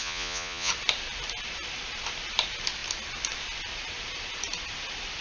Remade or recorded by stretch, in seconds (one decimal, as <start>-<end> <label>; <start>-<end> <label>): 0.0-0.7 remade; 0.7-5.2 recorded